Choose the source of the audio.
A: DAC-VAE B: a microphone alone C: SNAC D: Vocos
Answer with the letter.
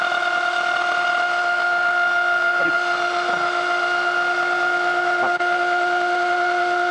B